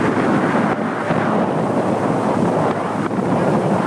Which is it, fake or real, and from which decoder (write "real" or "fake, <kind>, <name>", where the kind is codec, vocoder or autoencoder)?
real